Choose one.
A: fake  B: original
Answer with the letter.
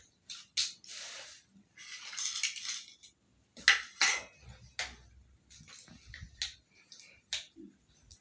B